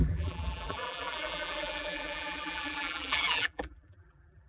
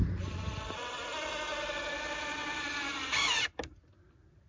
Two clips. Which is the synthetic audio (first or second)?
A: first